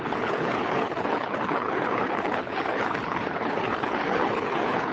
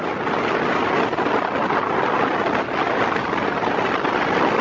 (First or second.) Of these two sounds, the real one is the second